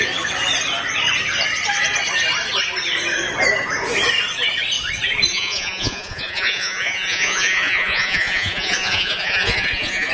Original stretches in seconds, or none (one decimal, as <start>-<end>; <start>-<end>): 0.0-5.3